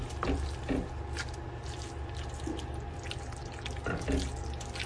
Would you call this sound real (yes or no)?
yes